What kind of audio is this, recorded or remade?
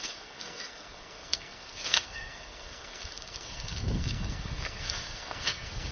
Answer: remade